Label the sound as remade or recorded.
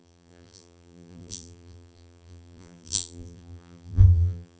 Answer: remade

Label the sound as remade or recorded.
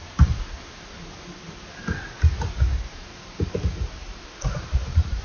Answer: remade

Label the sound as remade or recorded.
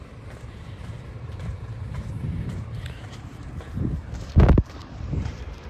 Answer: remade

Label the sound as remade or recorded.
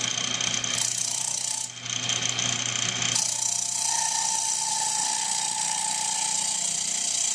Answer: recorded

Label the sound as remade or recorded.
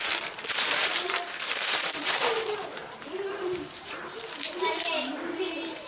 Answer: remade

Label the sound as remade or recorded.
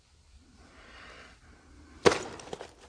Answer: recorded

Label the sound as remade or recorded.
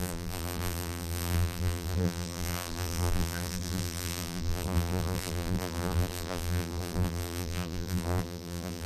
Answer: remade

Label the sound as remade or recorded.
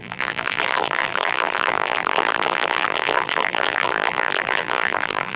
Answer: remade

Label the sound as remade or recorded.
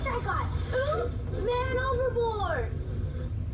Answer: remade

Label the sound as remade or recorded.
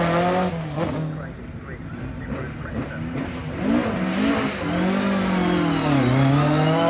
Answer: recorded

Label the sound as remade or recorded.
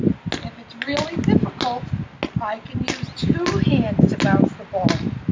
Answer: recorded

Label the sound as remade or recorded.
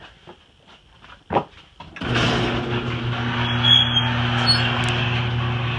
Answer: recorded